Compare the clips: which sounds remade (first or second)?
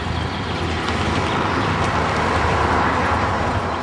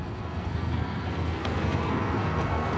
second